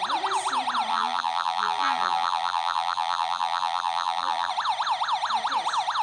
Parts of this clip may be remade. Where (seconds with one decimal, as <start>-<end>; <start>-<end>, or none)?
0.9-4.5